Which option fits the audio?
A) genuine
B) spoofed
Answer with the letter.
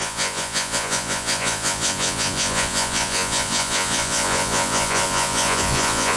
B